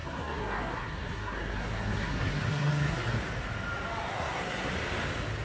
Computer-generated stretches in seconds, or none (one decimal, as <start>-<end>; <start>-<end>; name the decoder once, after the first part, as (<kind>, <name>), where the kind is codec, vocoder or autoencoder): 0.0-3.2 (codec, SNAC); 4.1-4.7